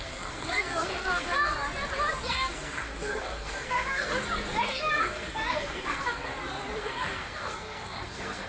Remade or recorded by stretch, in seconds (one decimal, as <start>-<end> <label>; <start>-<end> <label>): 0.0-1.5 remade; 1.5-2.3 recorded; 2.3-4.1 remade; 4.1-4.6 recorded; 4.6-6.3 remade; 6.3-6.8 recorded; 6.8-8.5 remade